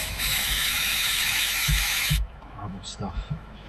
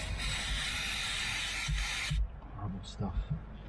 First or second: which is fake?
first